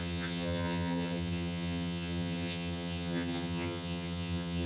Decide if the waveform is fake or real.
fake